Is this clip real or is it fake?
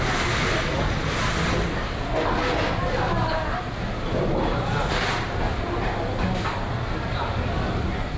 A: real